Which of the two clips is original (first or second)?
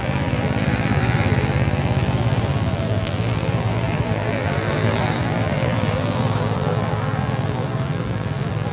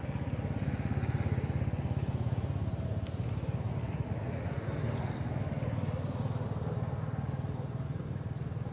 second